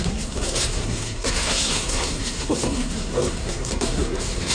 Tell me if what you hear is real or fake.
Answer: fake